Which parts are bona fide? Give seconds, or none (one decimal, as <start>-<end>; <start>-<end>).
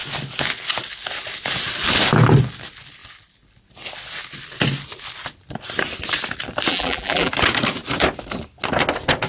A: 0.0-6.7; 7.3-9.3